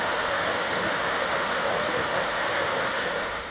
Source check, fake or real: fake